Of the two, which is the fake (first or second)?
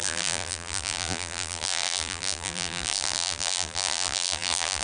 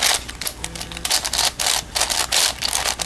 first